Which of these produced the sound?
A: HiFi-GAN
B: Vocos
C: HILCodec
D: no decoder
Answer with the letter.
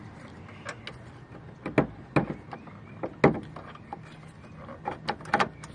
D